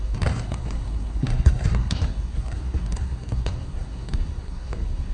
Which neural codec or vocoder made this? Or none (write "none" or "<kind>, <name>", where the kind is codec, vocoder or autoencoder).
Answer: codec, SNAC